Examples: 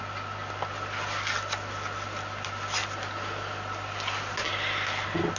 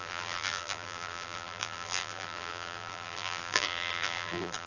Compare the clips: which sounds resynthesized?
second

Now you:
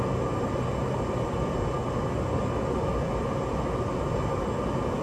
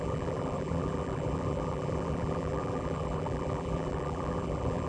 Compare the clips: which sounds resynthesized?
second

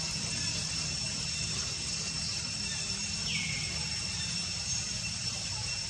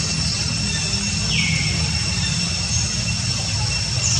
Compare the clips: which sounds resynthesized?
first